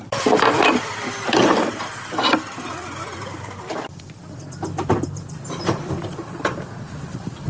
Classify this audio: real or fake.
fake